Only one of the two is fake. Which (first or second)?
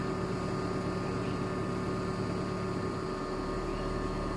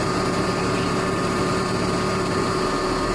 second